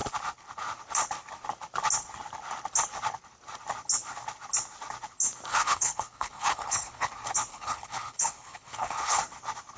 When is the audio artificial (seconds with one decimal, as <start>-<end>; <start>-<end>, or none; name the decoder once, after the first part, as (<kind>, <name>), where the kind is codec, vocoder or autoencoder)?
5.5-7.1 (codec, HILCodec); 7.5-9.2